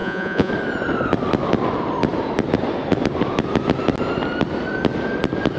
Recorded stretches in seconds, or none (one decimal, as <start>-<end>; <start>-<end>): 0.5-5.6